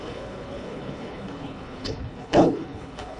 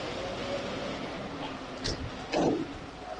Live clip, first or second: second